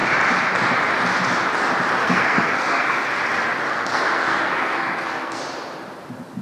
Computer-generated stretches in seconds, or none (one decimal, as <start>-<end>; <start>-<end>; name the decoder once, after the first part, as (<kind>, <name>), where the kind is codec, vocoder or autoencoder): 2.0-3.1 (codec, SNAC); 3.7-5.4